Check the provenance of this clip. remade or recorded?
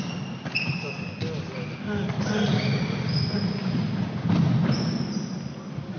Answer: recorded